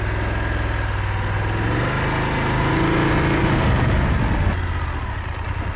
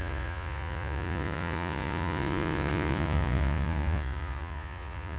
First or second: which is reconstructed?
second